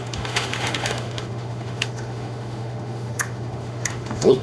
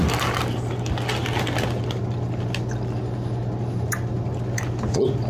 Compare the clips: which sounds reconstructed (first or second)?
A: first